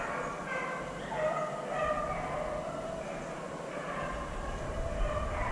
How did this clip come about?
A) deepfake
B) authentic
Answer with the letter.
B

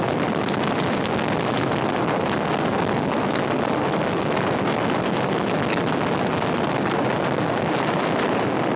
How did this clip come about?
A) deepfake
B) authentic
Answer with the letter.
B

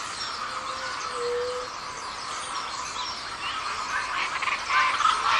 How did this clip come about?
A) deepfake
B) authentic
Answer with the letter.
B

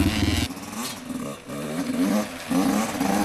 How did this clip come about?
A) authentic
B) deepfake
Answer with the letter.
A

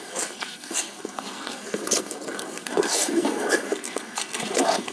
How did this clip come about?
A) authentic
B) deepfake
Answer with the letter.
B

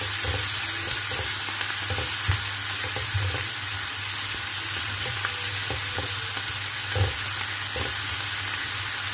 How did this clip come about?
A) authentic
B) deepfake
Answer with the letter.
A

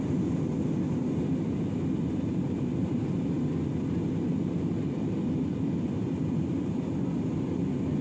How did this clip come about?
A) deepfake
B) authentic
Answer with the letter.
B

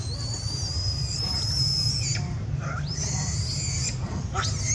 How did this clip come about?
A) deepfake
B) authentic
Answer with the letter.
B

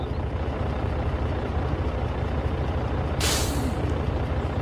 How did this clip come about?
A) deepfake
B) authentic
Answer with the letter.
A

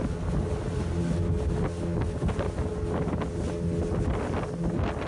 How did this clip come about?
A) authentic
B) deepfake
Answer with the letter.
A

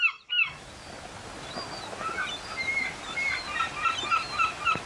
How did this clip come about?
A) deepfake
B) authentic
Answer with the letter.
B